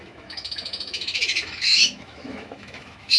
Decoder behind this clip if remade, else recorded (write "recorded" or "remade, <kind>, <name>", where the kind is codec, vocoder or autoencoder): remade, autoencoder, DAC-VAE